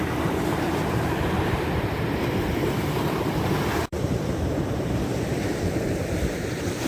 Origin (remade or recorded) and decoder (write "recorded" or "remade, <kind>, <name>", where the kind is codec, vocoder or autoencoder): remade, vocoder, BigVGAN v2